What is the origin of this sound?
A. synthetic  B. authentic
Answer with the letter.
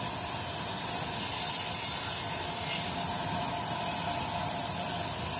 B